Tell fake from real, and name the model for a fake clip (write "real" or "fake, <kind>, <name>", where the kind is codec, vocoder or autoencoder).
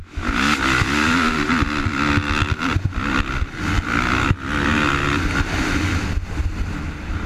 real